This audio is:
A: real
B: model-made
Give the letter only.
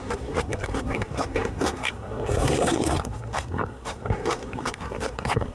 B